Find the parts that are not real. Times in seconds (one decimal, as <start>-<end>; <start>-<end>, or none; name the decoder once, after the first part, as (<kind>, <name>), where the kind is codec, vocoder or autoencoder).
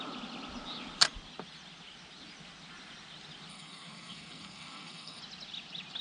3.5-5.2 (codec, SNAC)